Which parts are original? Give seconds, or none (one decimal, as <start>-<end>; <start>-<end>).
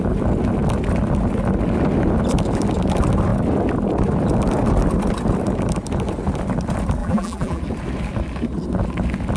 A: 0.0-7.0; 7.6-9.4